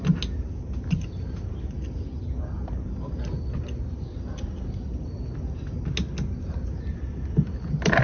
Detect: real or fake real